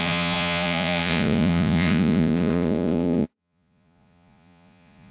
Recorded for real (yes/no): no